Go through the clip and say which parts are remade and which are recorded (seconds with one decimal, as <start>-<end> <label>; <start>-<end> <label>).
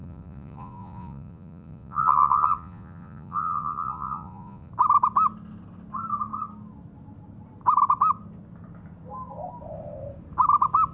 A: 0.0-4.7 remade; 4.7-10.9 recorded